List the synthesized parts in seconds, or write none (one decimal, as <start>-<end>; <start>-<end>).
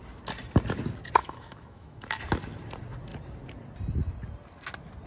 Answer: 1.2-2.2